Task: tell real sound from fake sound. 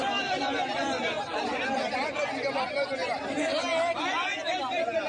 real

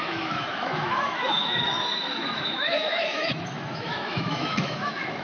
fake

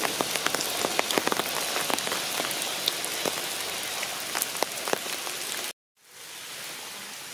real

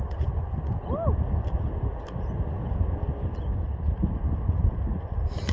real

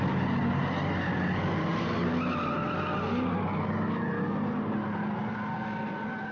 real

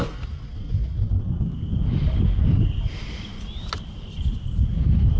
real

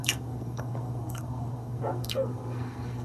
fake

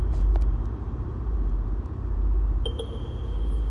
fake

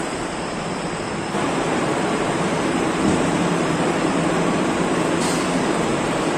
fake